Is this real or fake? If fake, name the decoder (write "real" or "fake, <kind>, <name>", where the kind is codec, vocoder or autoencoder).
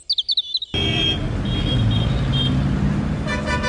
real